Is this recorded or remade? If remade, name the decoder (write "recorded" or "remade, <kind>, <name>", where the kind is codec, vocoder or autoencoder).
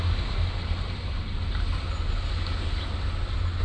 recorded